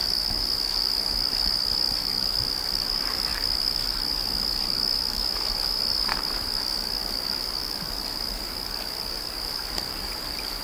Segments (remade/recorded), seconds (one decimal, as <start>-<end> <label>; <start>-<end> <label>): 0.0-10.6 remade